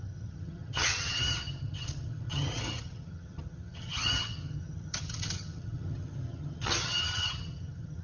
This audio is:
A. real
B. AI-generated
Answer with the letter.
B